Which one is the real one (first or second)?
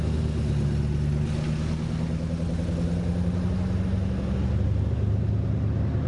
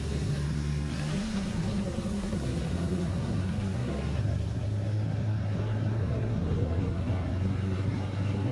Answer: first